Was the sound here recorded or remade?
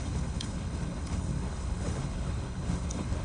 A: remade